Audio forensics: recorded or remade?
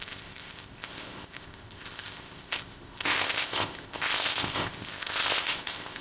remade